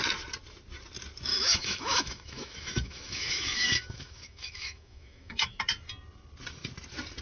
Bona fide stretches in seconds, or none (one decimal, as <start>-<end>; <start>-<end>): 0.0-1.3; 5.6-7.2